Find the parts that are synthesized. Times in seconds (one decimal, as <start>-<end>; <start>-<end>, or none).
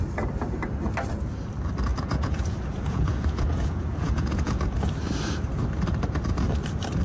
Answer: 1.9-4.6